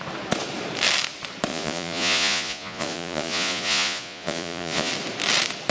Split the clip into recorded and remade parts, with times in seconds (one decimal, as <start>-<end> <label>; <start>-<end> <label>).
0.0-1.5 recorded; 1.5-4.9 remade; 4.9-5.7 recorded